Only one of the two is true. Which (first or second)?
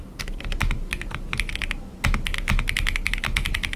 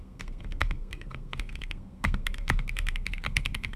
first